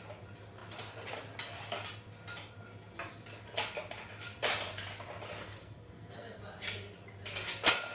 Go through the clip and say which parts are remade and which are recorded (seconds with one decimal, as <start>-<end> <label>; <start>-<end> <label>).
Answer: 0.0-5.4 recorded; 5.4-6.4 remade; 6.4-7.9 recorded